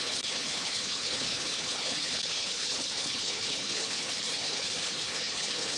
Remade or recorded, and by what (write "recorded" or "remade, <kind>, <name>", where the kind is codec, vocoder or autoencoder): remade, codec, HILCodec